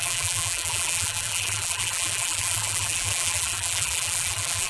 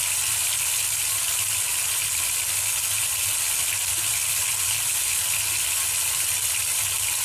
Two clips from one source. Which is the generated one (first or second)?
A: first